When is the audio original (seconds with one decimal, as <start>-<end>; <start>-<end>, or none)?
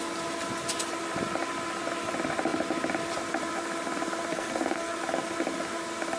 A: 0.0-4.3; 4.9-6.2